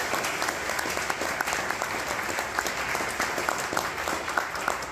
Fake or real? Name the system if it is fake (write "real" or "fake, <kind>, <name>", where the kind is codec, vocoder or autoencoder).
real